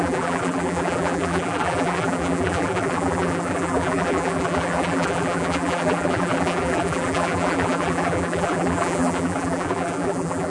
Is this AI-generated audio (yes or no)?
yes